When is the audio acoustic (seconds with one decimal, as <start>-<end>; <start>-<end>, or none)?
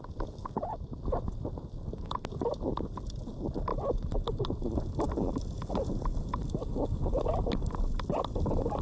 0.0-8.8